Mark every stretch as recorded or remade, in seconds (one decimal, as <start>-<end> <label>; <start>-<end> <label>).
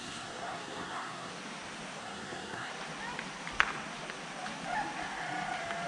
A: 0.0-1.3 remade; 1.3-2.0 recorded; 2.0-2.7 remade; 2.7-5.9 recorded